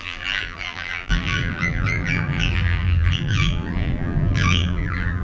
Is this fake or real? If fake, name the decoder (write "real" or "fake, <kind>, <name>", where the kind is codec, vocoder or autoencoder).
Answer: fake, vocoder, BigVGAN v2